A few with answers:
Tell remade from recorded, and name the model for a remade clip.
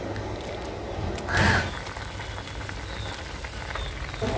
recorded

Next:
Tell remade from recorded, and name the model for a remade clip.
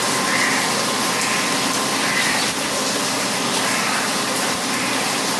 recorded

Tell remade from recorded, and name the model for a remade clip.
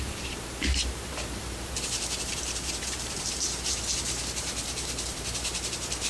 remade, vocoder, BigVGAN v2